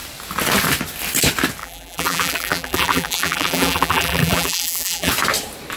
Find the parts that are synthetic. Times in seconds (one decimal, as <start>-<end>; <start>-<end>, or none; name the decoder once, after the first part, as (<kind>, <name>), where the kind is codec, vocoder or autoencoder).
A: 1.6-5.1 (vocoder, BigVGAN v2)